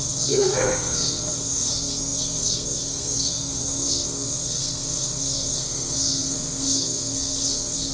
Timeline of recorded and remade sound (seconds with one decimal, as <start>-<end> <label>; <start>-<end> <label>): 0.0-7.9 remade